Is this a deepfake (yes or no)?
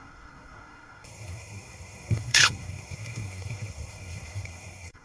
yes